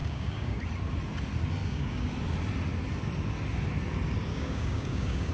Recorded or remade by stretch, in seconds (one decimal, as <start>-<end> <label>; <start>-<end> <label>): 0.0-0.6 remade; 0.6-1.6 recorded; 1.6-2.1 remade; 2.1-4.3 recorded; 4.3-5.3 remade